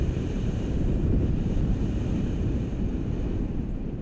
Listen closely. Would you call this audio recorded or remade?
remade